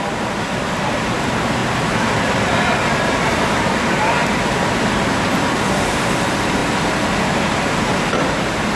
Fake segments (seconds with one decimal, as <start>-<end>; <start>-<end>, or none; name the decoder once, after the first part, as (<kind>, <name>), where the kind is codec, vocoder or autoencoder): 0.0-1.6 (vocoder, BigVGAN v2); 3.6-4.2; 5.5-8.8